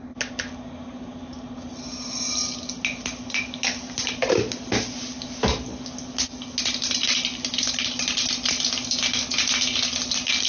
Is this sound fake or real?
real